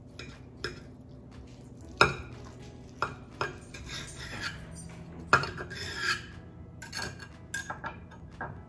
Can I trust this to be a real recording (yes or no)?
yes